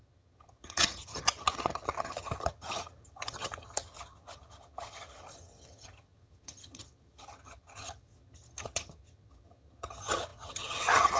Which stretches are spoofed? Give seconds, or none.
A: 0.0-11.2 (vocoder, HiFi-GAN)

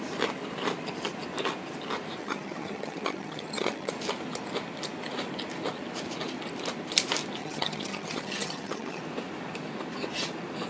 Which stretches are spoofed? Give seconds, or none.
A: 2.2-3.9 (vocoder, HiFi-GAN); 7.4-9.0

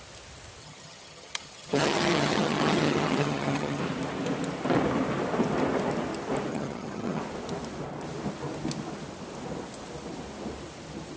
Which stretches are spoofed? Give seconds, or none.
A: 0.6-3.8 (vocoder, HiFi-GAN); 6.5-7.2

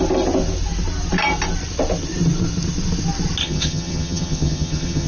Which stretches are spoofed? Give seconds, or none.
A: 3.4-5.1 (vocoder, HiFi-GAN)

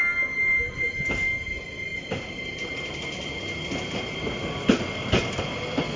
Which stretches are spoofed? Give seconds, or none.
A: none

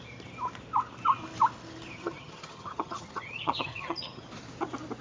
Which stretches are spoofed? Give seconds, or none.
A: 1.9-4.2 (vocoder, HiFi-GAN)

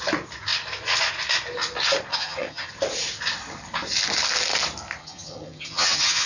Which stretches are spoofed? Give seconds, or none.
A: 2.1-2.7 (vocoder, HiFi-GAN); 5.0-6.3